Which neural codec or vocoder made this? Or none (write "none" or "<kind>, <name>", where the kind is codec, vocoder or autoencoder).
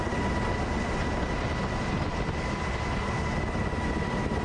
none